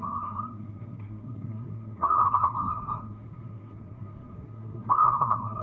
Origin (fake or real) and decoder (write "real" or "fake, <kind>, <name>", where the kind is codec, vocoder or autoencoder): fake, codec, SNAC